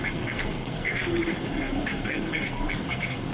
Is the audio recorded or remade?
remade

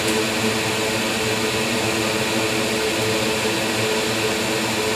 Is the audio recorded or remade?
recorded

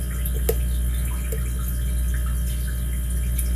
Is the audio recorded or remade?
recorded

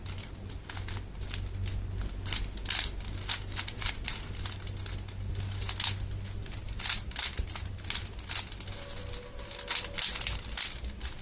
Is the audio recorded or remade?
recorded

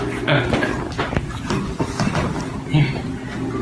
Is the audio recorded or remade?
recorded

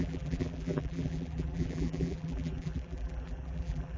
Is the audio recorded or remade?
remade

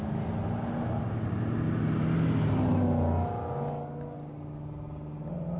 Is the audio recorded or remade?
recorded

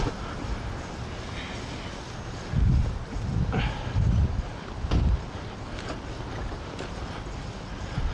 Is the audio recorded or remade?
recorded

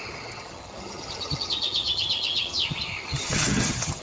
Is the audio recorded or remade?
remade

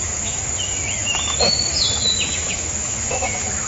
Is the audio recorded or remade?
remade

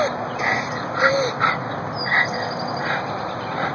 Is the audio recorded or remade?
recorded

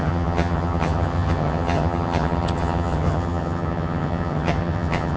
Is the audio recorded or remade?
remade